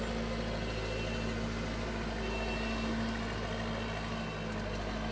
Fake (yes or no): no